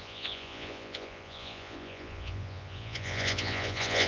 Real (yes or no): no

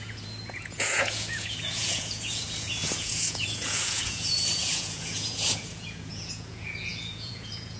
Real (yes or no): no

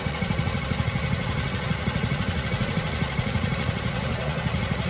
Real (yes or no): no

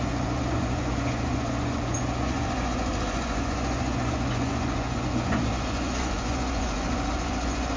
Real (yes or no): no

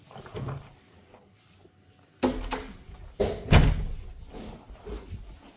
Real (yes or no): yes